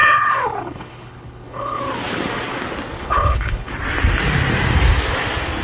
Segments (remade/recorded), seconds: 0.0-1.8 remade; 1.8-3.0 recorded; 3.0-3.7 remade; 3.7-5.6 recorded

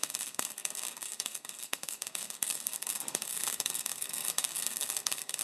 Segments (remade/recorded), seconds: 0.0-5.4 remade

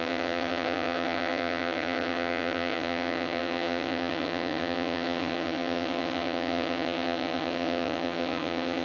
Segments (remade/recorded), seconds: 0.0-8.8 remade